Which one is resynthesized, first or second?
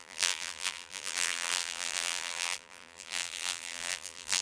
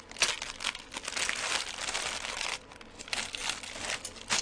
first